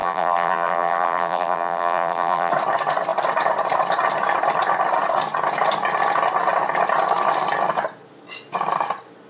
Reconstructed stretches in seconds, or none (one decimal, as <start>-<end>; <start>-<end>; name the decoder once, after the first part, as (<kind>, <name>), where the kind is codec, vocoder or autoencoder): 0.0-2.5 (vocoder, BigVGAN v2)